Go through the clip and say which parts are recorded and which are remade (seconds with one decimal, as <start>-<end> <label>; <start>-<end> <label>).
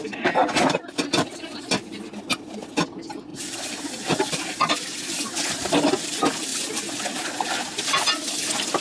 0.0-3.3 recorded; 3.3-5.3 remade; 5.3-8.8 recorded